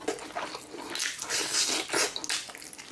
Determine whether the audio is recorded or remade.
recorded